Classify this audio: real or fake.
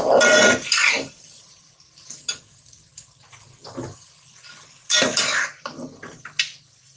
real